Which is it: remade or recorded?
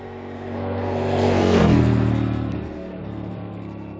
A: remade